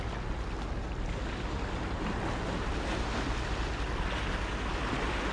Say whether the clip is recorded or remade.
recorded